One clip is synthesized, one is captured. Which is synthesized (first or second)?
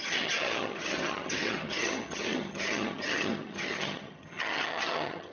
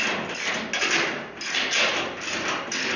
first